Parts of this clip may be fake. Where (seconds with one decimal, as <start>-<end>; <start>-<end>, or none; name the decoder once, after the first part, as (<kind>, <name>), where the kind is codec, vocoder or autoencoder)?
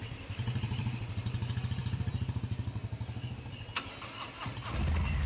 0.0-1.0 (vocoder, BigVGAN v2); 1.8-3.9